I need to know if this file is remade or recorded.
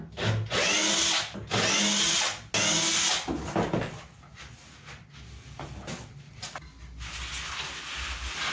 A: recorded